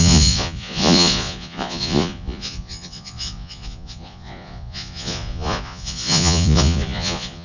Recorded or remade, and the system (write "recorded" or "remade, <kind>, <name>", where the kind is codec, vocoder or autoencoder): remade, vocoder, Vocos